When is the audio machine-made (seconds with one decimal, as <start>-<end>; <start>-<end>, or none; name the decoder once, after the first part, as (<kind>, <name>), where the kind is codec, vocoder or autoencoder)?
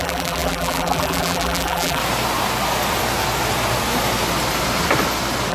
0.0-2.0 (vocoder, BigVGAN v2)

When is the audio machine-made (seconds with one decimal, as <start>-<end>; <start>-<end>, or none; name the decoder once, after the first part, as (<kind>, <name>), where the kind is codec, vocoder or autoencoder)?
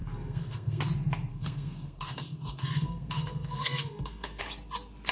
0.0-0.8 (codec, SNAC); 1.3-4.4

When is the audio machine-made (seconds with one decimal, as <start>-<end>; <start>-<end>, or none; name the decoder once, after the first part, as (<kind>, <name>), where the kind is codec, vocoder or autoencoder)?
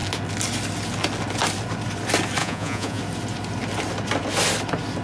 2.4-3.0 (vocoder, Vocos)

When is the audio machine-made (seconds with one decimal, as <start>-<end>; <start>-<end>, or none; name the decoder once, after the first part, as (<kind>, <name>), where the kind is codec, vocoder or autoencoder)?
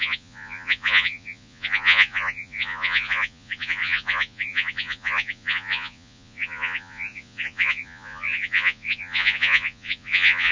0.0-10.5 (vocoder, Vocos)